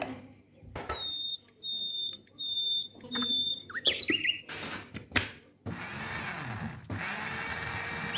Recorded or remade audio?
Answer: recorded